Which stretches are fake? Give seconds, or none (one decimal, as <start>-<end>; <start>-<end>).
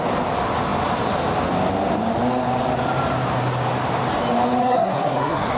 4.6-5.6